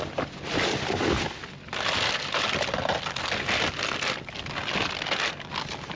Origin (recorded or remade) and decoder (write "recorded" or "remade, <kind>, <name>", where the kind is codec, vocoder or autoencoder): recorded